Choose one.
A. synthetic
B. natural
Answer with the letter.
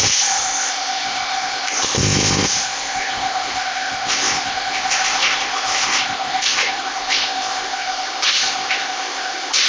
A